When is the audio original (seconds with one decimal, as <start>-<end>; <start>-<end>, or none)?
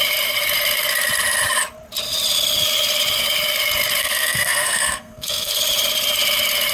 0.0-4.0; 5.6-6.7